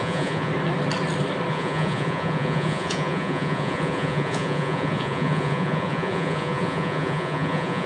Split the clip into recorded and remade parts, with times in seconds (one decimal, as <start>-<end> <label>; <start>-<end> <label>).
0.0-0.5 remade; 0.5-1.5 recorded; 1.5-7.9 remade